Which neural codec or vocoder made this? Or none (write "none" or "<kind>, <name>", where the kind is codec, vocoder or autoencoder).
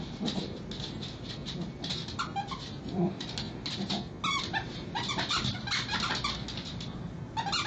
none